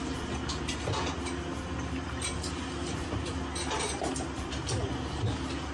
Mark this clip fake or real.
real